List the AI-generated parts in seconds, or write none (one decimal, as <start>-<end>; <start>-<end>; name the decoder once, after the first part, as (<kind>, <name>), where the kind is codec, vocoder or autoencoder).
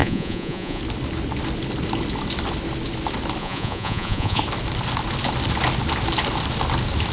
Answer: 0.0-0.8 (vocoder, Vocos); 3.4-4.4